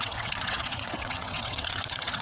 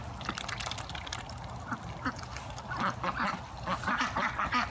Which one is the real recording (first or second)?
second